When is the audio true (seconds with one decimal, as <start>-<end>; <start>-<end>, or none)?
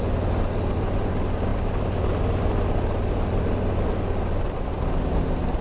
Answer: 0.0-5.6